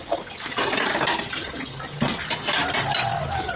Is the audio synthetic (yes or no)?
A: no